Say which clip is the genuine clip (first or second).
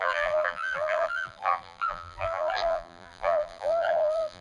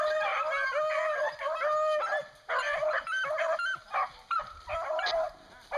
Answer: second